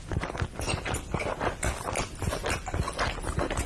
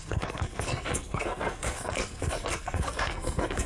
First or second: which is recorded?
first